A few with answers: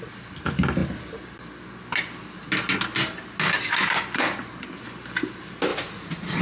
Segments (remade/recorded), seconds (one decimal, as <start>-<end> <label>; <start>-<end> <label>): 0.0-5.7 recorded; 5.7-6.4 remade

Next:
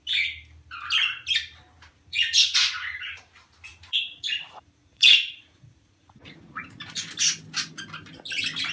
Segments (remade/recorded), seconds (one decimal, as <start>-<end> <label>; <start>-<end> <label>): 0.0-1.9 recorded; 1.9-3.2 remade; 3.2-3.7 recorded; 3.7-6.7 remade; 6.7-8.7 recorded

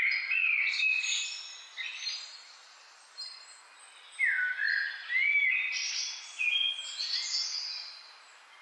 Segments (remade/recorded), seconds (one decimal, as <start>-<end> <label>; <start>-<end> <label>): 0.0-8.6 recorded

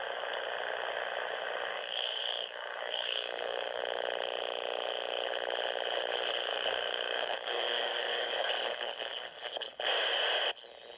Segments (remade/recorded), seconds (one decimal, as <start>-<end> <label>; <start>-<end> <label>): 0.0-1.7 recorded; 1.7-3.8 remade; 3.8-6.5 recorded; 6.5-9.8 remade; 9.8-11.0 recorded